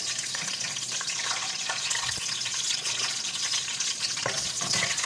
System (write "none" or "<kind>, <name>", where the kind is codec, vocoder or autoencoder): vocoder, Vocos